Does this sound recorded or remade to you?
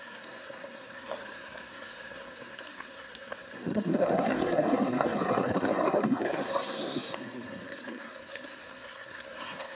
remade